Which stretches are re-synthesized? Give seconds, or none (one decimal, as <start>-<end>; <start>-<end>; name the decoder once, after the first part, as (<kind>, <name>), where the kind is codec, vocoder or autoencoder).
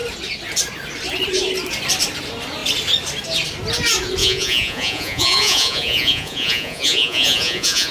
4.2-7.9 (vocoder, Vocos)